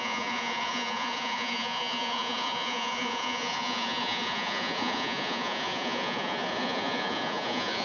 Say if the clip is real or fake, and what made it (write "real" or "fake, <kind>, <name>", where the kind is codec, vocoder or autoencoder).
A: fake, vocoder, Vocos